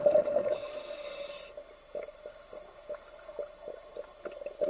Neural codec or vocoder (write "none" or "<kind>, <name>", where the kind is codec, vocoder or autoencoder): none